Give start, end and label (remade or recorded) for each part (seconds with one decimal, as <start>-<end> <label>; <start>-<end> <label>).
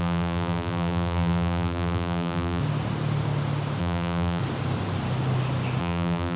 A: 0.0-2.6 remade; 2.6-3.8 recorded; 3.8-4.4 remade; 4.4-5.8 recorded; 5.8-6.4 remade